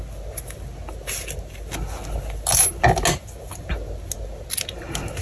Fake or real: real